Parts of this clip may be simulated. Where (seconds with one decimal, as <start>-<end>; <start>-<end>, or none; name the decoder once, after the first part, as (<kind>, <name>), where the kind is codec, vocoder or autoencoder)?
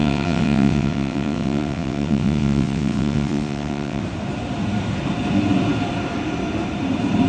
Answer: 0.0-4.0 (vocoder, WaveNeXt)